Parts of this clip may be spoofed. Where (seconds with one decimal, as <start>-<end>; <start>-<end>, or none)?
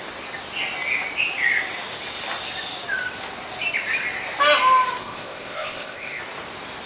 5.0-6.2